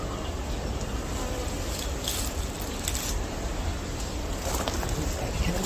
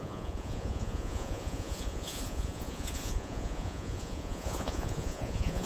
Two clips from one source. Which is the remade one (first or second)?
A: second